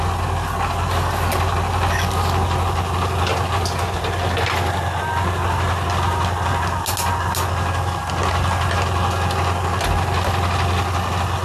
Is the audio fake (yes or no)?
no